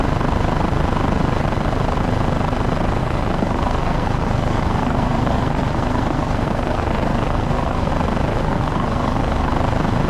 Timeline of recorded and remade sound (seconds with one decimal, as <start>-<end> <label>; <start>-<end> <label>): 0.0-3.0 recorded; 3.0-7.9 remade; 7.9-8.3 recorded; 8.3-9.5 remade; 9.5-10.1 recorded